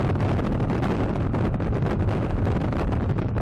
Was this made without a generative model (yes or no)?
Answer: yes